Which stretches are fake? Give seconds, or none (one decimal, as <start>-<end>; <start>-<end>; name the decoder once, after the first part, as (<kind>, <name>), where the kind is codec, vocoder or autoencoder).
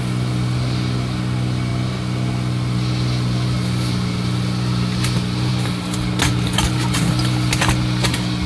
none